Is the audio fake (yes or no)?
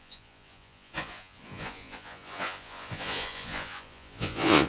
yes